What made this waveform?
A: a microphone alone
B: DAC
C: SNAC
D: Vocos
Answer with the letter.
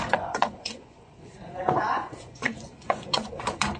D